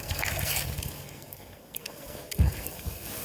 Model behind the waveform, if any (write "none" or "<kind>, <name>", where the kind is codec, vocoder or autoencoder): codec, SNAC